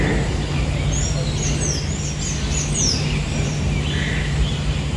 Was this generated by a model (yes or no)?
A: no